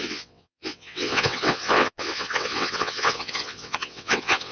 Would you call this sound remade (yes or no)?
yes